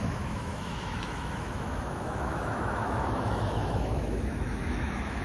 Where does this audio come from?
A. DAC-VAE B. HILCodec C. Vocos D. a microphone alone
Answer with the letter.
A